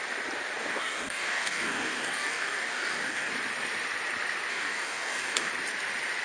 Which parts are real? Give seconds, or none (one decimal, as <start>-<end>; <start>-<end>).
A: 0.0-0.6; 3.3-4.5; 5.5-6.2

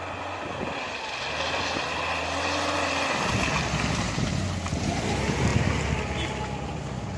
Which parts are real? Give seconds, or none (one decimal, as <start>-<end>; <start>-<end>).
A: 0.0-7.2

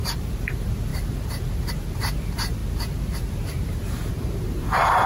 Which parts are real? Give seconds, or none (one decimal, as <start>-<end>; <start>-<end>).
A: none

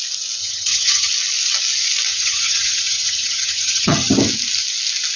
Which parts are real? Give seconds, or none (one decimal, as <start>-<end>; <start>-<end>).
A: 0.0-0.4; 1.1-2.1; 4.1-5.2

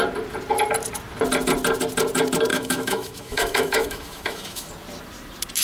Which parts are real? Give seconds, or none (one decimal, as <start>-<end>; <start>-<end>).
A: 0.0-2.5; 4.7-5.6